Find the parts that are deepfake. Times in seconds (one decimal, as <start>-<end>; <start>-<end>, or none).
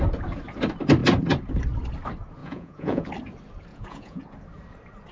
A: 2.4-3.1; 3.7-4.2